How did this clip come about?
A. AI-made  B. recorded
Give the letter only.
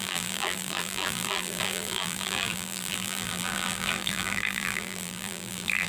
A